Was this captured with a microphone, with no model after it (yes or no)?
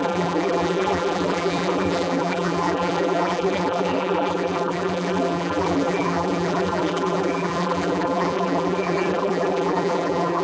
no